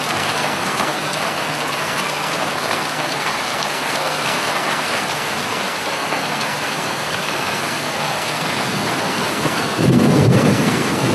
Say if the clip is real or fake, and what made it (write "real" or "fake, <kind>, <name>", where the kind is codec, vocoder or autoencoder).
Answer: fake, codec, SNAC